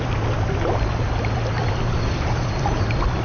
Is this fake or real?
real